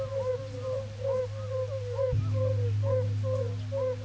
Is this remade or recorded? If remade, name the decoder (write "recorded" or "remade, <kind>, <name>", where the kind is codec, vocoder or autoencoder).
recorded